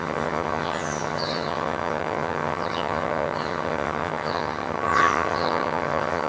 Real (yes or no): no